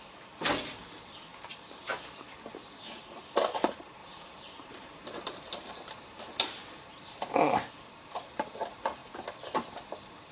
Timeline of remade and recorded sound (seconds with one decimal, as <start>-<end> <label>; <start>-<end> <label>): 0.0-1.9 recorded; 1.9-3.2 remade; 3.2-4.0 recorded; 4.0-7.4 remade; 7.4-10.3 recorded